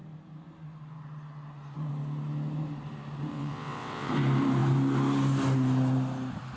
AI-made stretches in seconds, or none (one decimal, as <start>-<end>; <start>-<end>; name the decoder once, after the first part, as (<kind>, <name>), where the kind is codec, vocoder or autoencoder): 3.3-4.1 (vocoder, WaveNeXt)